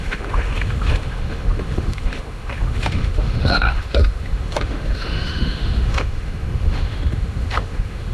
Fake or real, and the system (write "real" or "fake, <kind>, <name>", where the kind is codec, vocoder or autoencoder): fake, autoencoder, DAC-VAE